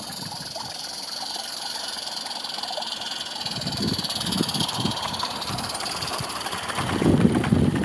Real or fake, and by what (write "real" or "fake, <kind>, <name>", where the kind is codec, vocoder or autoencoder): real